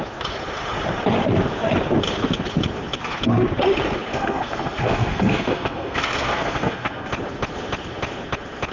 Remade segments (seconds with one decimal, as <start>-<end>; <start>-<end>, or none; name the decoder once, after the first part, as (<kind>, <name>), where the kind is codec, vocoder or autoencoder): 4.1-7.1 (codec, SNAC)